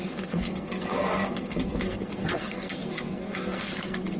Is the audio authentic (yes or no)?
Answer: no